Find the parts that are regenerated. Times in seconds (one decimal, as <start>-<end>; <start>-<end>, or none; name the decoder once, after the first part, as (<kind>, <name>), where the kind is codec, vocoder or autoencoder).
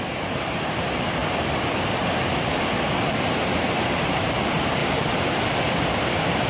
0.0-1.2 (vocoder, BigVGAN v2); 3.3-4.8; 5.9-6.5